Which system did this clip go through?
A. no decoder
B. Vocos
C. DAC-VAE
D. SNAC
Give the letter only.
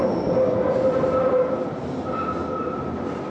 A